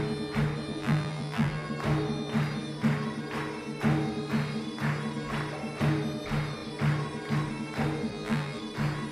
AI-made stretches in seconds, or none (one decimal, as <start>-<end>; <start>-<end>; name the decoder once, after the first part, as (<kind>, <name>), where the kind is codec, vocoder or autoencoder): 0.7-1.7 (vocoder, BigVGAN v2); 8.1-8.6